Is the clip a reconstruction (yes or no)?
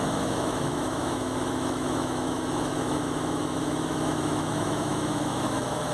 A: yes